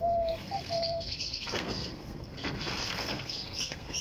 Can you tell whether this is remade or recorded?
remade